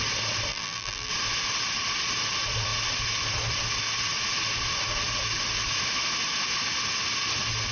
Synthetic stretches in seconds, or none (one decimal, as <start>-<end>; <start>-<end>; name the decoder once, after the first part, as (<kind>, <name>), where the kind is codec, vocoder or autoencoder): 0.5-1.1 (vocoder, BigVGAN v2)